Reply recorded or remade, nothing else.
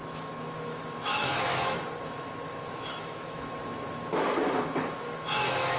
remade